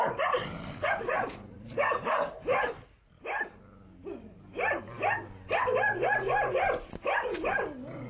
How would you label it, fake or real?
real